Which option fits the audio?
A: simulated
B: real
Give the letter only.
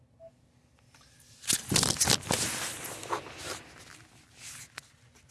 B